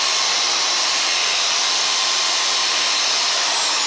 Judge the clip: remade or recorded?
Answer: recorded